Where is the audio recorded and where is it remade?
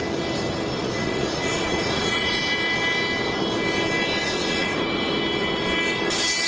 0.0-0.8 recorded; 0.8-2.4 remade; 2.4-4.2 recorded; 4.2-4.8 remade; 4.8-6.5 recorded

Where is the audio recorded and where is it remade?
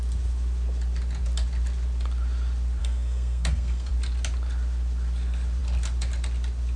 0.0-2.8 recorded; 2.8-3.9 remade; 3.9-6.8 recorded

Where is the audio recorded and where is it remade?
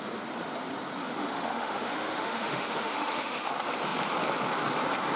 0.0-1.0 recorded; 1.0-3.5 remade; 3.5-5.2 recorded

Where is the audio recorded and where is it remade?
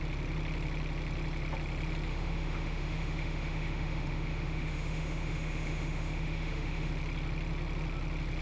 0.0-2.1 recorded; 2.1-6.9 remade; 6.9-8.4 recorded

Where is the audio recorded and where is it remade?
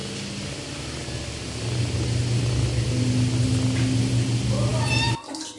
0.0-5.6 recorded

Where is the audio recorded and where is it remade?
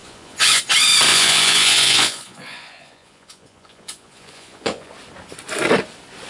0.0-0.6 remade; 0.6-1.1 recorded; 1.1-4.9 remade; 4.9-6.3 recorded